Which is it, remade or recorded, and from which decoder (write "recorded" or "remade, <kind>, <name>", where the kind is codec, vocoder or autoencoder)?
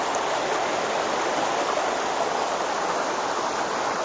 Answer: recorded